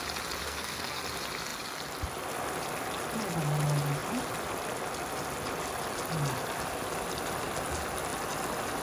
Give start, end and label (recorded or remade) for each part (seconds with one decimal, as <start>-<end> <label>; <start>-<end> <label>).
0.0-0.4 recorded; 0.4-1.0 remade; 1.0-8.8 recorded